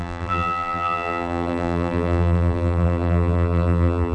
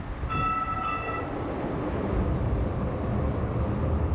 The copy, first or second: first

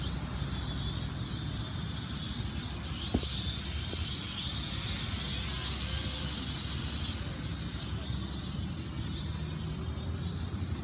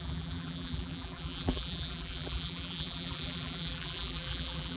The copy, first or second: second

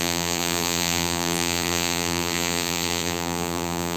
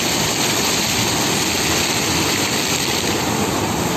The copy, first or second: first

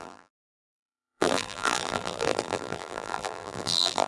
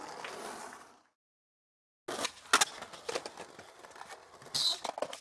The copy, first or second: first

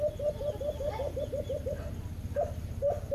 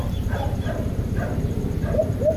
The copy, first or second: second